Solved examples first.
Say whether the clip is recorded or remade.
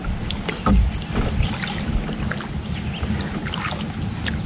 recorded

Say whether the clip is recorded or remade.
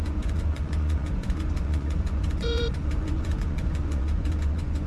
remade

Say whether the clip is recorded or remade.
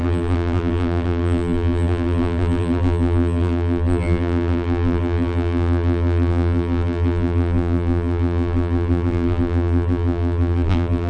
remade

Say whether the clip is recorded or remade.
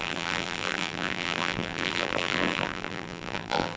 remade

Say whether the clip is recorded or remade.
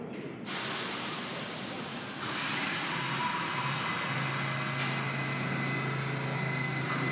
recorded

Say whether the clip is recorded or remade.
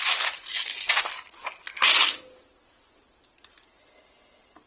recorded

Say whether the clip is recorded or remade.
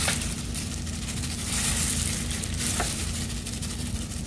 remade